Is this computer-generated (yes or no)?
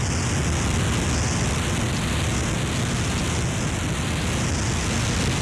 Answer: no